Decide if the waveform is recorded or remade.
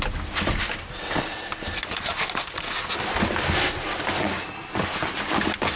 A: recorded